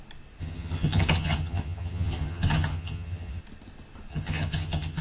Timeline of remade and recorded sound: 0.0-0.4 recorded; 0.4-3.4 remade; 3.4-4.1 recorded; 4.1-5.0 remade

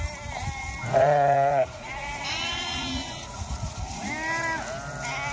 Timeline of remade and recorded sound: 0.0-1.0 recorded; 1.0-4.1 remade; 4.1-5.3 recorded

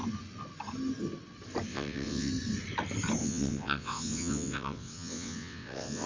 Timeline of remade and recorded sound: 0.0-1.7 recorded; 1.7-2.3 remade; 2.3-3.2 recorded; 3.2-6.1 remade

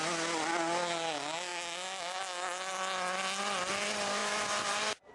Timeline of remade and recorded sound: 0.0-5.1 recorded